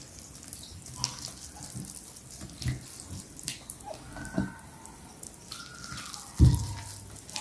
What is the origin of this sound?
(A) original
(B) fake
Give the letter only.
A